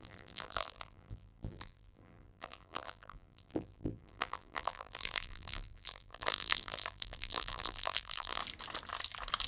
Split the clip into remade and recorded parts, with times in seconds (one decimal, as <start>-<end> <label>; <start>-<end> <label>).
0.0-8.4 remade; 8.4-9.5 recorded